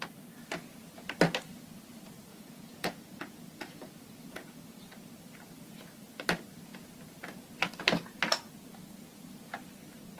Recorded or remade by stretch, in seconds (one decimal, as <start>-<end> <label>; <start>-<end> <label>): 0.0-2.3 recorded; 2.3-4.6 remade; 4.6-10.2 recorded

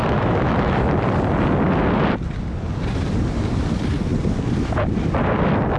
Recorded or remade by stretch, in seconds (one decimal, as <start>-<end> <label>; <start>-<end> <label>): 0.0-0.9 remade; 0.9-5.8 recorded

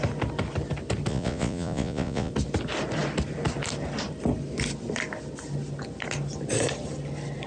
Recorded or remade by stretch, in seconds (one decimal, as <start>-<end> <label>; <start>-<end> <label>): 0.0-1.1 recorded; 1.1-2.3 remade; 2.3-7.5 recorded

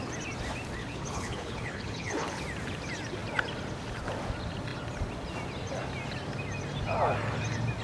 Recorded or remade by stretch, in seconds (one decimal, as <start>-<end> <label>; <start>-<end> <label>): 0.0-0.8 recorded; 0.8-2.4 remade; 2.4-7.8 recorded

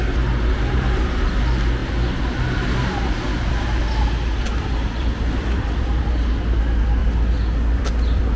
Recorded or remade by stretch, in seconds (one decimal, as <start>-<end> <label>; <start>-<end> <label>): 0.0-4.6 recorded; 4.6-6.0 remade; 6.0-8.4 recorded